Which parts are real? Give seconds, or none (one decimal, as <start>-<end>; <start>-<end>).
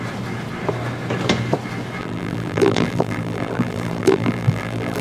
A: 0.0-2.0